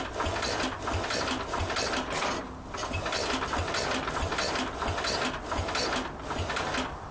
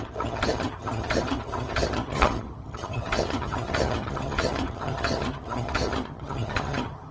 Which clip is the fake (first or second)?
second